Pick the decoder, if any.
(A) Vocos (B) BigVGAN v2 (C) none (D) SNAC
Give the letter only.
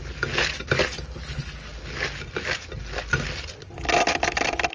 C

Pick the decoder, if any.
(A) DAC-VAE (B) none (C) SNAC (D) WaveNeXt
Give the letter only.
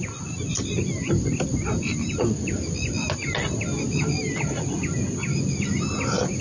B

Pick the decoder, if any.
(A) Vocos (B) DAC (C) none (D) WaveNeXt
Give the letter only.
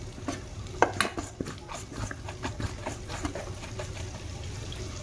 C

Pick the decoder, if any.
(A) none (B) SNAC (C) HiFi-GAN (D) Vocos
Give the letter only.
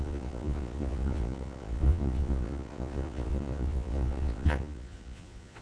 D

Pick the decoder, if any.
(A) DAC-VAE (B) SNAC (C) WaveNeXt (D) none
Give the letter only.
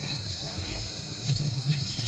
B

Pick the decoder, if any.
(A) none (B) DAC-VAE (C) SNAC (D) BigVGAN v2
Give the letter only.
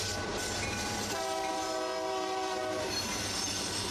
D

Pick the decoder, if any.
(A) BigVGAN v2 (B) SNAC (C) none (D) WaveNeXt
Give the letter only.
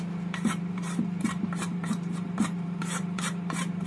A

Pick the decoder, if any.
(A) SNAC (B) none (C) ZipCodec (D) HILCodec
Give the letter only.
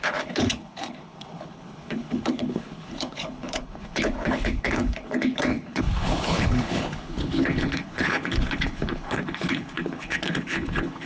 D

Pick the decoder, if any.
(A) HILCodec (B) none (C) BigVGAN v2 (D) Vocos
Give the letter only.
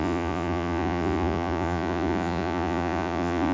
D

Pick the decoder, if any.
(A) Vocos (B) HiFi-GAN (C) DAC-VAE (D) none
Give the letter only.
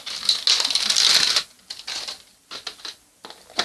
D